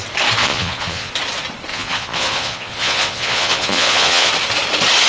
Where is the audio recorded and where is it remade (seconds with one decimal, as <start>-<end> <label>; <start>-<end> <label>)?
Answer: 0.0-0.4 recorded; 0.4-1.1 remade; 1.1-1.7 recorded; 1.7-4.3 remade; 4.3-5.1 recorded